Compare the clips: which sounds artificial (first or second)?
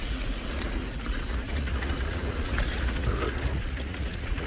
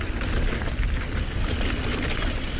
first